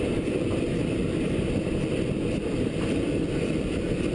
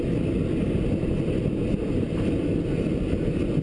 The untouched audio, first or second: second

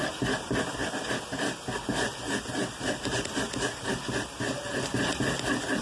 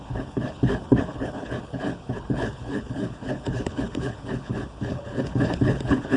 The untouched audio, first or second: first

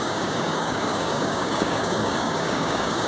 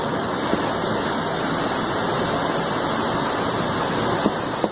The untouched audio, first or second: second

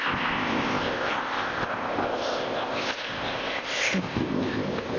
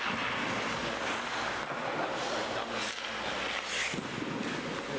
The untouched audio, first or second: second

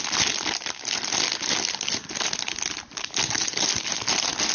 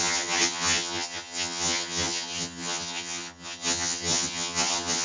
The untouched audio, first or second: first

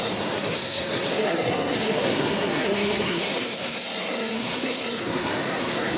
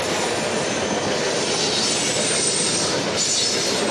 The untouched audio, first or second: second